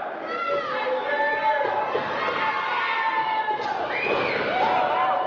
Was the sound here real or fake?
real